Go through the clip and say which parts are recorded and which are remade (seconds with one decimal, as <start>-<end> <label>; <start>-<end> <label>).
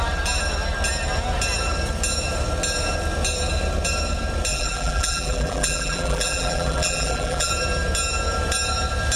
0.0-4.5 recorded; 4.5-7.5 remade; 7.5-9.2 recorded